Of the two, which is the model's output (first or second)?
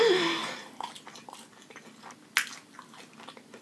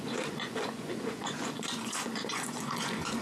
second